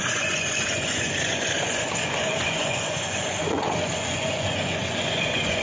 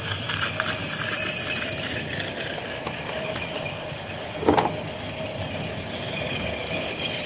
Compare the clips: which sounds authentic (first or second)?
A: second